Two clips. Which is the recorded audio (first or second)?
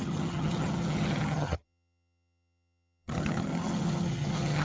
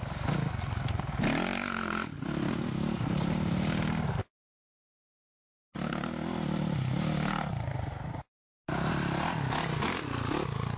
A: second